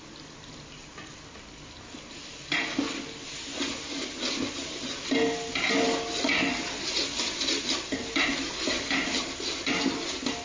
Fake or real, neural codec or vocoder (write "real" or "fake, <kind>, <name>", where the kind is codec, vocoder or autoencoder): real